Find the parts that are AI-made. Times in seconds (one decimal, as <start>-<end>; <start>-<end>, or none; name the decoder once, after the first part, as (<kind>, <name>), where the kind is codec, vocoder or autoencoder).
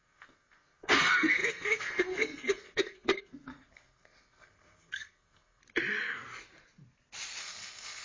0.0-5.6 (codec, SNAC); 7.4-8.0